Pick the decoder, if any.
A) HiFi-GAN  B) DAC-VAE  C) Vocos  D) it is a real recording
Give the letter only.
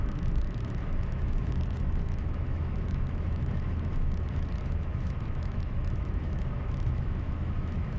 B